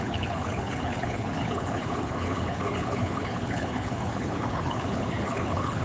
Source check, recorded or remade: remade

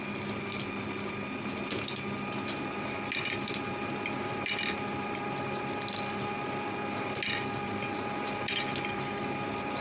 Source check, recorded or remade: recorded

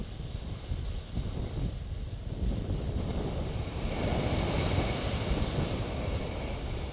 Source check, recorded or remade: recorded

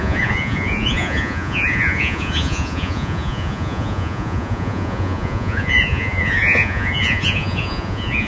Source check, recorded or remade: remade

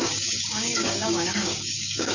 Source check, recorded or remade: remade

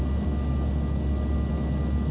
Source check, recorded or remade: recorded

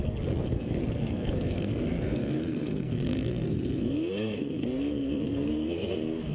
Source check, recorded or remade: remade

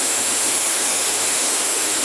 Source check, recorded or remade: remade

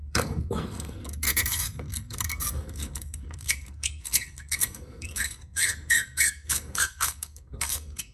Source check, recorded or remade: remade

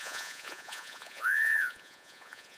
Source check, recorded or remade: remade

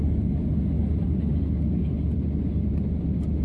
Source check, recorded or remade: recorded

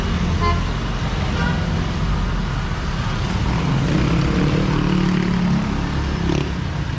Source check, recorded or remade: recorded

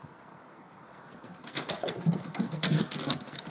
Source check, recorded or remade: remade